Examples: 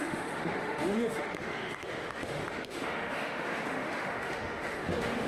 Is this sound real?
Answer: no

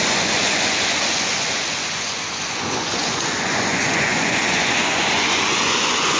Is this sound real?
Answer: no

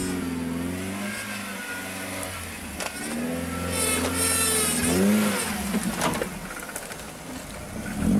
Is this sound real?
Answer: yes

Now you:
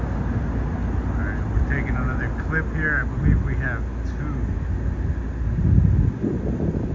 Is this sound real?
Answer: yes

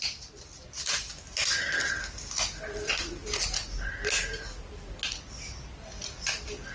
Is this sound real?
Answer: yes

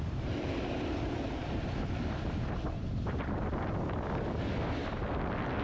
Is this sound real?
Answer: yes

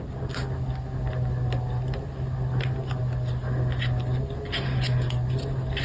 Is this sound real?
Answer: yes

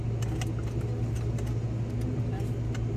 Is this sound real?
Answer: yes